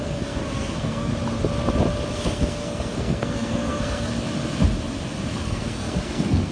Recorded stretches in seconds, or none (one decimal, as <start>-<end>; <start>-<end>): 1.1-2.1; 4.1-5.3